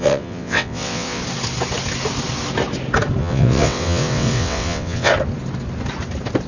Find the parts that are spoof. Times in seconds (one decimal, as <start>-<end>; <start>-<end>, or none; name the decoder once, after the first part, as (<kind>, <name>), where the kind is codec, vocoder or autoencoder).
0.0-1.2 (vocoder, WaveNeXt); 3.2-5.1